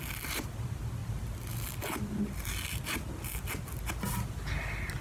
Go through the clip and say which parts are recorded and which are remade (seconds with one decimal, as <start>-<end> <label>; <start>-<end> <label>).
0.0-5.0 recorded